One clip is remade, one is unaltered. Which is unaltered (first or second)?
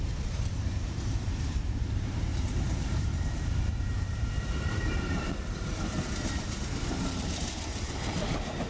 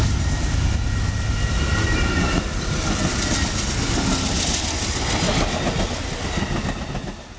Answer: second